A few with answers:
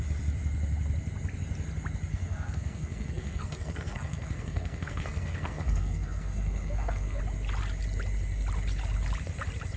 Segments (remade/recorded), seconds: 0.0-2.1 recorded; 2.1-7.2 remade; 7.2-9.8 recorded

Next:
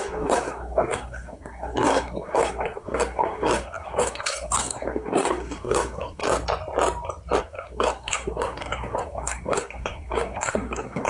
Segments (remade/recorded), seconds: 0.0-6.2 remade; 6.2-7.4 recorded; 7.4-11.1 remade

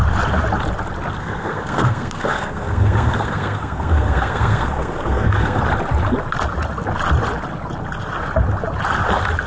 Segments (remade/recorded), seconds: 0.0-1.2 recorded; 1.2-5.6 remade; 5.6-9.5 recorded

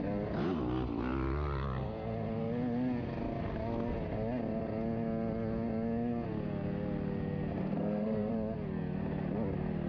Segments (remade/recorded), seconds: 0.0-7.6 recorded; 7.6-8.3 remade; 8.3-9.9 recorded

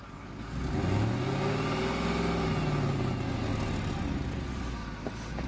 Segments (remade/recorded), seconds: 0.0-5.5 recorded